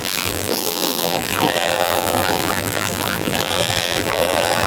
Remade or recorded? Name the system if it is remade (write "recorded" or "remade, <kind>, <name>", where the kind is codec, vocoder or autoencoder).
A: remade, vocoder, BigVGAN v2